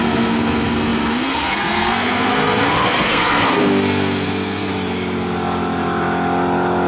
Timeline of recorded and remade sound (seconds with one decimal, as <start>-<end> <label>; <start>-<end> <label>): 0.0-4.7 remade; 4.7-6.9 recorded